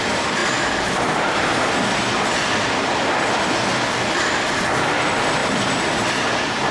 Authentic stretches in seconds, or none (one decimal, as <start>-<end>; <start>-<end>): 0.0-6.7